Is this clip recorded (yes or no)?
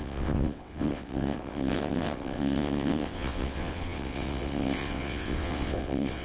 no